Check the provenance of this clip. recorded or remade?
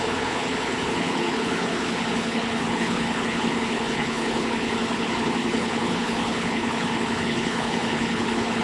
remade